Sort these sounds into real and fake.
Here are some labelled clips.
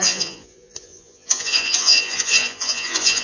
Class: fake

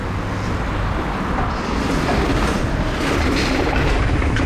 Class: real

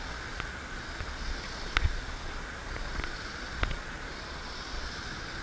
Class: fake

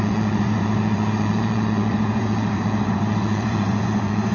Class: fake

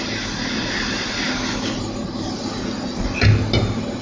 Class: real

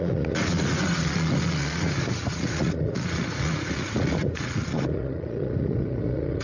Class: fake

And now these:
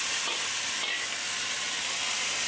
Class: real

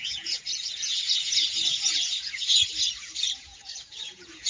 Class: fake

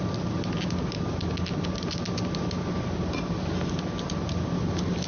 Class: real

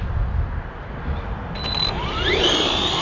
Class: real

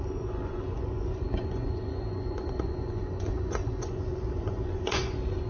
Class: fake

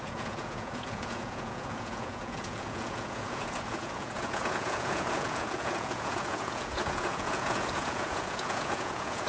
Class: fake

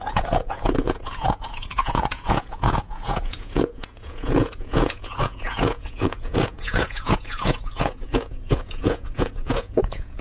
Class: fake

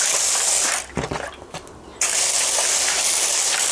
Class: real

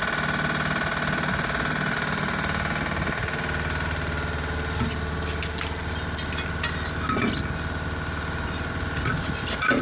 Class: real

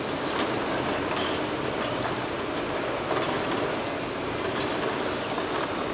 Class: real